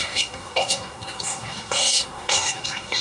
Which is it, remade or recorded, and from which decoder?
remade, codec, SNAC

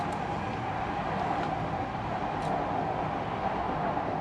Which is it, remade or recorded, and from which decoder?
recorded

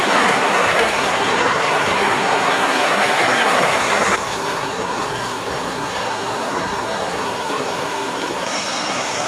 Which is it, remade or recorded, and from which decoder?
remade, codec, SNAC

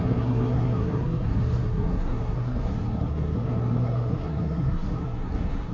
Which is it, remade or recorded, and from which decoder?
remade, codec, SNAC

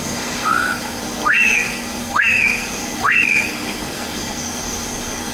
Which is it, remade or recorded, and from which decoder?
remade, codec, SNAC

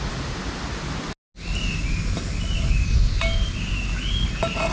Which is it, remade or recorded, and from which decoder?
recorded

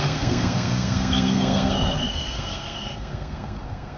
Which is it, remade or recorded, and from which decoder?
remade, codec, SNAC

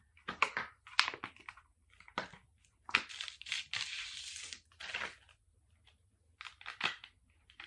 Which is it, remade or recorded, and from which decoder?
recorded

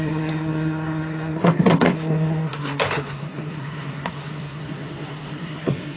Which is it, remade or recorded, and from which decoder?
remade, codec, SNAC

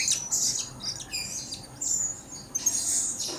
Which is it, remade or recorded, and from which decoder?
recorded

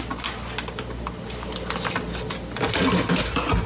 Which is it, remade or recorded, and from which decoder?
recorded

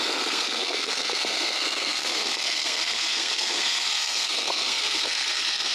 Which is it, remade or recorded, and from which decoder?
remade, codec, SNAC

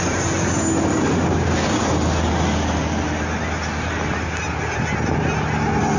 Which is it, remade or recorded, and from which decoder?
recorded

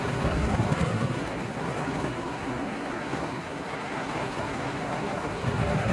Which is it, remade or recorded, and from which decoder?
remade, codec, SNAC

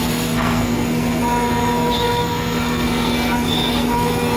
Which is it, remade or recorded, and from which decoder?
remade, codec, SNAC